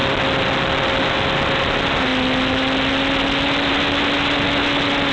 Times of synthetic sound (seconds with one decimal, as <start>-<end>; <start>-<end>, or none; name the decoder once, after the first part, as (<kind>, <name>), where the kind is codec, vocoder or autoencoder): none